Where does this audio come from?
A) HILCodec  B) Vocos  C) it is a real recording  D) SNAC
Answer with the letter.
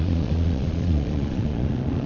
B